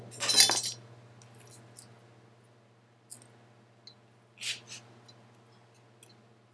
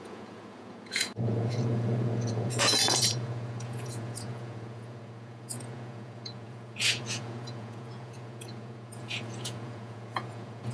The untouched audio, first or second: first